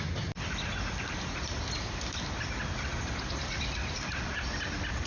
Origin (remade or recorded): recorded